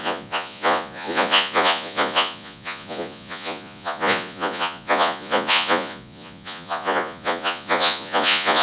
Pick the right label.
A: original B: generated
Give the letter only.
B